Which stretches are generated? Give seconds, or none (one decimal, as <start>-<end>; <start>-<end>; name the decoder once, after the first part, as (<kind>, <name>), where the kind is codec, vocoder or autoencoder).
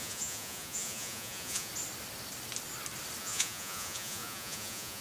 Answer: 0.0-1.7 (vocoder, Vocos); 3.2-5.0